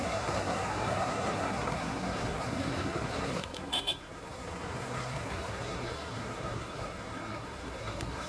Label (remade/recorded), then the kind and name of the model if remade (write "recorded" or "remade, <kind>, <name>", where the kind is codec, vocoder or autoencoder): remade, codec, SNAC